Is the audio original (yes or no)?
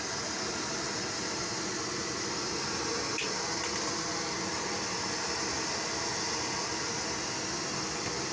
yes